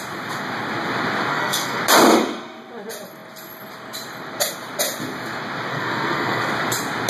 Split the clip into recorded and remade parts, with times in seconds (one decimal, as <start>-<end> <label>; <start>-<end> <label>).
0.0-1.3 recorded; 1.3-1.8 remade; 1.8-5.7 recorded; 5.7-6.5 remade; 6.5-7.1 recorded